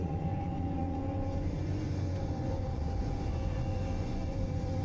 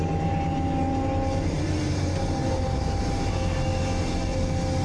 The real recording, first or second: second